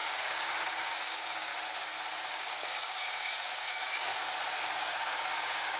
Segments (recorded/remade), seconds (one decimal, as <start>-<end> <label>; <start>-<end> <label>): 0.0-1.5 remade; 1.5-2.3 recorded; 2.3-4.1 remade; 4.1-4.6 recorded; 4.6-5.8 remade